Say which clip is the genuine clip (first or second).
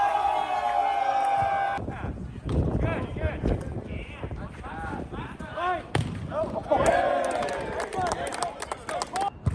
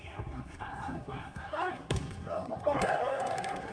first